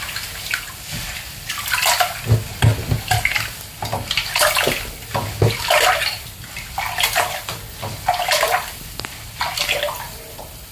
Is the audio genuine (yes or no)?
yes